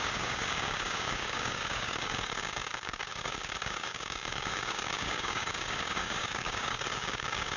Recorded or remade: remade